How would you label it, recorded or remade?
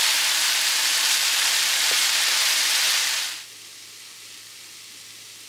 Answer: recorded